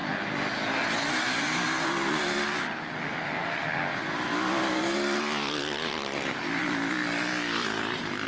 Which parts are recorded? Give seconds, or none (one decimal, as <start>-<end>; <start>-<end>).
0.0-8.3